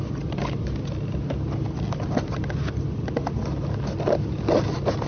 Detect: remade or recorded recorded